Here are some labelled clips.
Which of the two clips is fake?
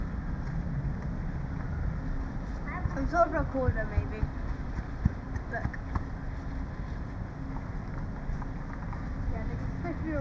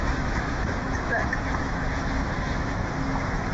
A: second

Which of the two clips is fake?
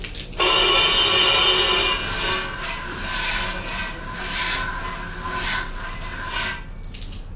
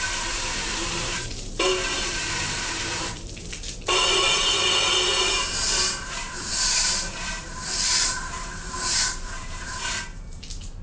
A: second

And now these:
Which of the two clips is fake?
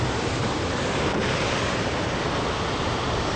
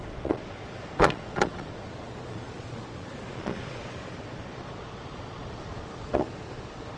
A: second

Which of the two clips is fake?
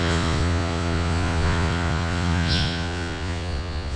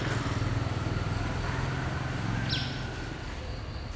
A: first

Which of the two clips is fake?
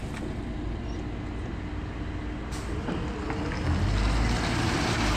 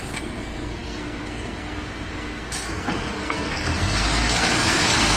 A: second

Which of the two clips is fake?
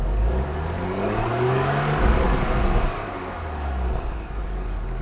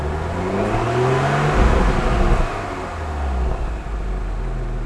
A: first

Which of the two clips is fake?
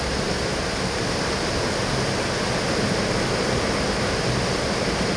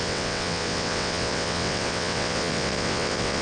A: second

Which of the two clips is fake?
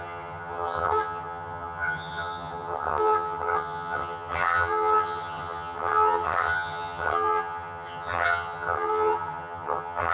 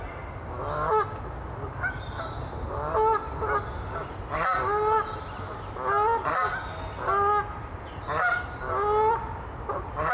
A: first